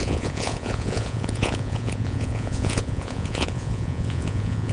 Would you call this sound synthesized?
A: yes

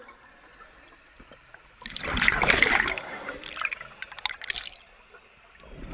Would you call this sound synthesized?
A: no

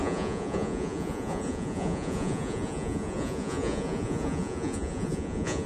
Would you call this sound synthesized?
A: yes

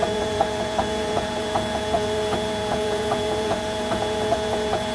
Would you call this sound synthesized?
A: yes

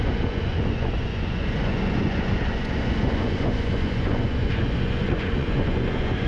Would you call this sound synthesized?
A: yes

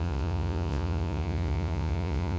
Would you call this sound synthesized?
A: yes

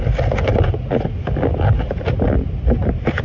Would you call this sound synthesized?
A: no